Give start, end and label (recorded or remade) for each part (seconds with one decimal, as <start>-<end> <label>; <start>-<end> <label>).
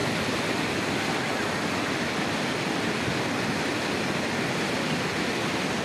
0.0-3.5 remade; 3.5-5.8 recorded